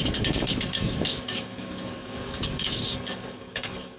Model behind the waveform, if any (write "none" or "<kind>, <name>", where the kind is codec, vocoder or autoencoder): codec, DAC